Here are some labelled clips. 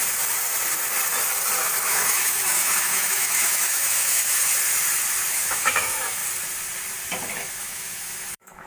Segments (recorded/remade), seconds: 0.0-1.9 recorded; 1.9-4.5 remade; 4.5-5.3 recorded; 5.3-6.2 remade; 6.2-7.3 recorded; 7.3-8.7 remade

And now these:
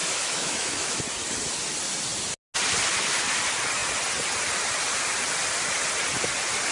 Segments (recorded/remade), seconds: 0.0-1.0 remade; 1.0-6.7 recorded

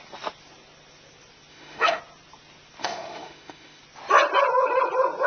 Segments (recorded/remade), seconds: 0.0-1.5 recorded; 1.5-2.0 remade; 2.0-2.8 recorded; 2.8-3.8 remade; 3.8-5.3 recorded